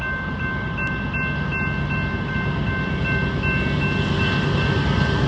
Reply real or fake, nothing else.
real